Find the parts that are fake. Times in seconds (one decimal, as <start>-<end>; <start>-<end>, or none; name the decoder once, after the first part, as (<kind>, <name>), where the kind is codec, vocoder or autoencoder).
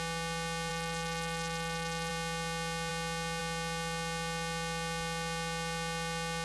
0.7-2.1 (autoencoder, DAC-VAE)